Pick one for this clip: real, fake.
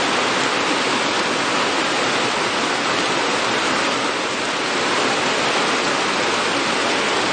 real